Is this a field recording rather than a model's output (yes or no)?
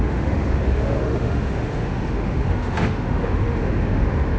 no